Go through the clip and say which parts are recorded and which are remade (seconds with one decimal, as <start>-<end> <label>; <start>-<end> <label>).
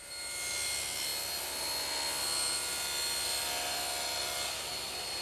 0.0-5.2 recorded